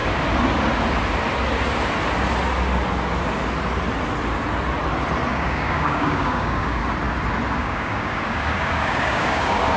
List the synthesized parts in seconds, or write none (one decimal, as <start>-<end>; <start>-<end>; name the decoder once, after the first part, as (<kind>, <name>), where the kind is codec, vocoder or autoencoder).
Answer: 5.3-6.8 (codec, DAC); 7.6-9.8